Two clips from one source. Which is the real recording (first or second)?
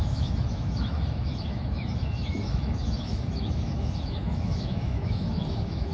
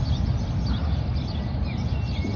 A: second